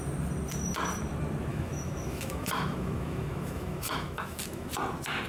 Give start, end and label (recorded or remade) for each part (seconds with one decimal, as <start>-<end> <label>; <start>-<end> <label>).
0.0-1.5 recorded; 1.5-4.7 remade; 4.7-5.3 recorded